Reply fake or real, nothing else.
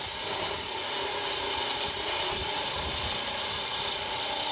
real